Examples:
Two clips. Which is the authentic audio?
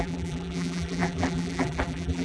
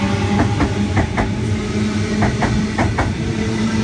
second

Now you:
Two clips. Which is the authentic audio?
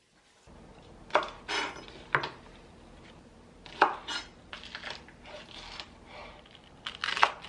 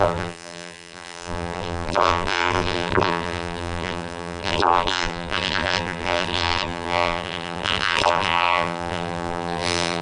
first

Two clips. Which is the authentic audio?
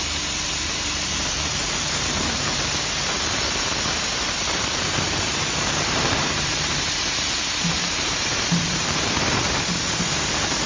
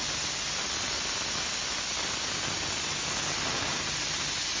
second